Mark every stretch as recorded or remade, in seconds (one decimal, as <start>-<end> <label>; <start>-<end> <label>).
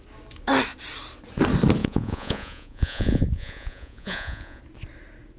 0.0-1.8 recorded; 1.8-4.6 remade; 4.6-5.4 recorded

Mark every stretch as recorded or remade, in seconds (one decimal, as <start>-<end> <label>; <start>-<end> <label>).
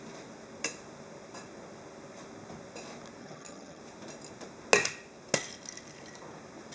0.0-3.2 recorded; 3.2-3.8 remade; 3.8-6.7 recorded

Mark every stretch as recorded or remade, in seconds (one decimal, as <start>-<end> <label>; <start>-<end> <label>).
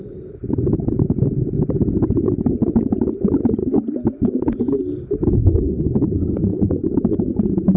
0.0-3.6 recorded; 3.6-4.6 remade; 4.6-6.5 recorded; 6.5-7.0 remade; 7.0-7.8 recorded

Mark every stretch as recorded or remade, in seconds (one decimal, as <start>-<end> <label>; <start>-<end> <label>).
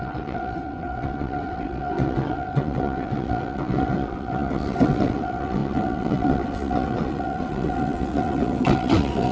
0.0-9.3 remade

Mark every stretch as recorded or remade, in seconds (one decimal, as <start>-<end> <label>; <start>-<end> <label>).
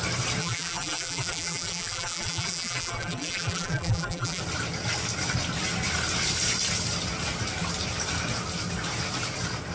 0.0-0.4 recorded; 0.4-4.4 remade; 4.4-9.7 recorded